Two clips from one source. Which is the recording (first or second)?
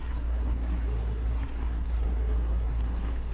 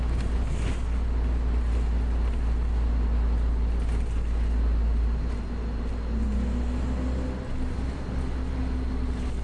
second